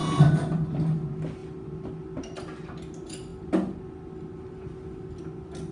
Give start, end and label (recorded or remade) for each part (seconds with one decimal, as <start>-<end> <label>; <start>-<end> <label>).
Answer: 0.0-5.7 recorded